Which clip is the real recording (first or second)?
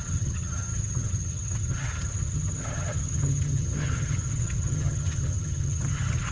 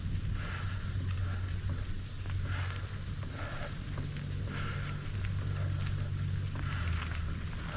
second